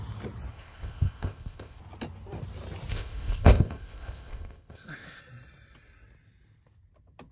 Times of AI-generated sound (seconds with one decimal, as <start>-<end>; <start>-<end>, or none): 0.5-1.8; 2.9-5.2